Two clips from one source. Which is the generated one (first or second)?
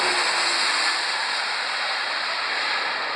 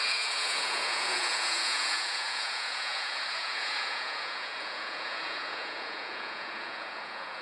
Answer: second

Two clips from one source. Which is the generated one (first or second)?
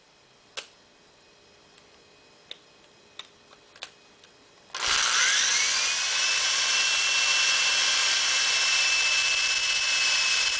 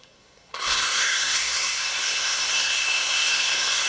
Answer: second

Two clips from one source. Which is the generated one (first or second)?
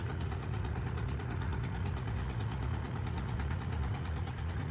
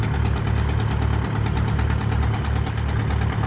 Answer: first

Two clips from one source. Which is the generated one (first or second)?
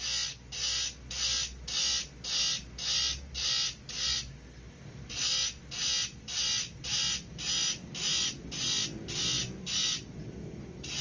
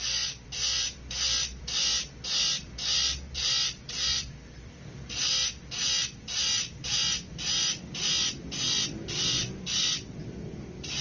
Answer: second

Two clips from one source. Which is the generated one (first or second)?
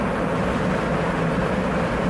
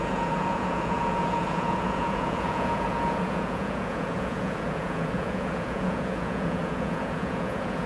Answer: second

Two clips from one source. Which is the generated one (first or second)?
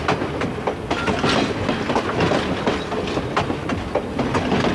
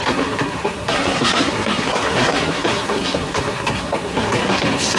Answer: second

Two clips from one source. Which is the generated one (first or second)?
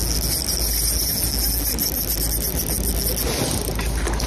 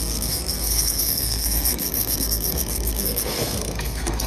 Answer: second